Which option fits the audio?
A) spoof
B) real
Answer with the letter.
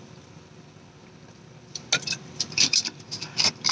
B